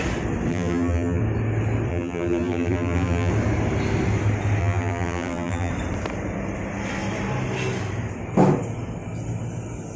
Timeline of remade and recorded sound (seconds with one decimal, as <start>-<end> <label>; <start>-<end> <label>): 0.0-0.5 recorded; 0.5-1.2 remade; 1.2-1.9 recorded; 1.9-3.3 remade; 3.3-4.6 recorded; 4.6-5.7 remade; 5.7-10.0 recorded